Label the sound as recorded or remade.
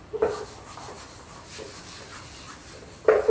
recorded